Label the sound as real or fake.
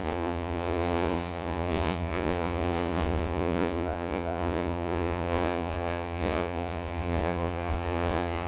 fake